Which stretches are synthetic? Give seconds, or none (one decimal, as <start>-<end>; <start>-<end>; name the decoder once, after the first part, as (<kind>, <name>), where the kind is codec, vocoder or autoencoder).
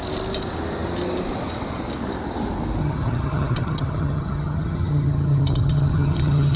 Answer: 2.8-6.6 (vocoder, HiFi-GAN)